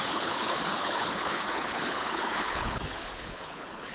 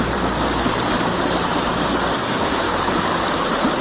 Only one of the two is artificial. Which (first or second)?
first